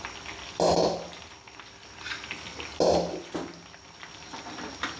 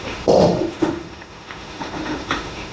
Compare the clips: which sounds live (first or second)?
first